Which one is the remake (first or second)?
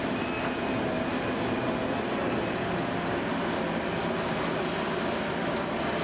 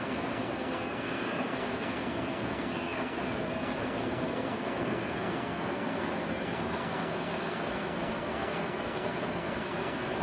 second